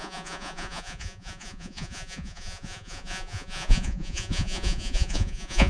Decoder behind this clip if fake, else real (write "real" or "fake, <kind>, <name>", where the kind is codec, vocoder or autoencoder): fake, vocoder, Vocos